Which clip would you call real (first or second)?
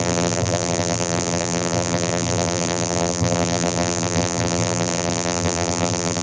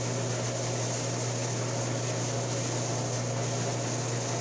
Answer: second